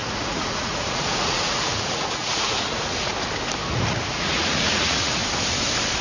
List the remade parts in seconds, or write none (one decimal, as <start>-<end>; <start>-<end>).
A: 0.0-3.1; 3.7-5.2